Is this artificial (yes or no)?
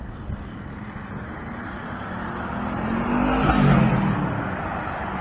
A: no